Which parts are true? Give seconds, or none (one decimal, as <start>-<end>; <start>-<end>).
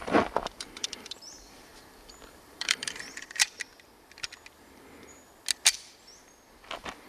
0.0-0.4; 3.5-7.1